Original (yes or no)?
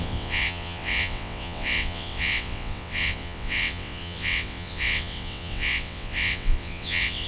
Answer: no